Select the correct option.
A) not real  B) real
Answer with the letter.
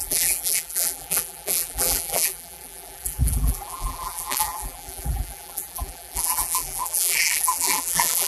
A